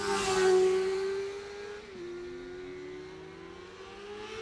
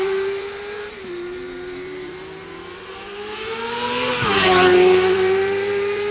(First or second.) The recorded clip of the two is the first